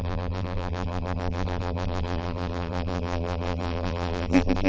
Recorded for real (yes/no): no